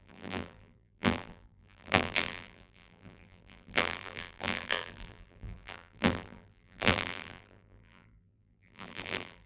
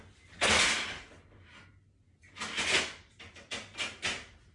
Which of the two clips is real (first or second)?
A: second